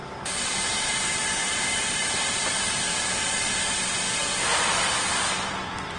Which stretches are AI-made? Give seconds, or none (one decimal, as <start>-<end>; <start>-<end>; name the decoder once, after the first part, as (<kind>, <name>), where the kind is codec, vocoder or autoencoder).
0.0-3.6 (vocoder, BigVGAN v2)